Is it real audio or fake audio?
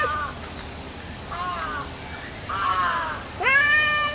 real